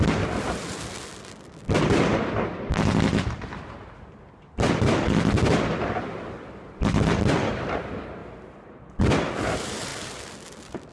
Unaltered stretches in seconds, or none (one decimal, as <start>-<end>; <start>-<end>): 0.0-10.9

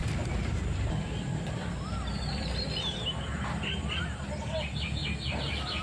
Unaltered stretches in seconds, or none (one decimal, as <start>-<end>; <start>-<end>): 5.0-5.8

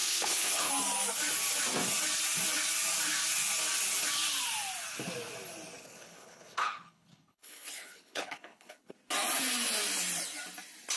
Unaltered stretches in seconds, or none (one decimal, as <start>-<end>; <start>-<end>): 0.7-5.8; 8.9-11.0

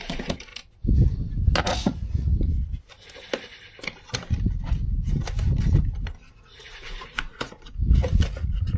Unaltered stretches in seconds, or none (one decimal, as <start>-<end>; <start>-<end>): 0.5-1.6; 2.3-6.3